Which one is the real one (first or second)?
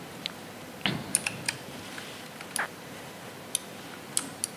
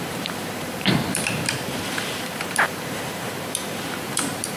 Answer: first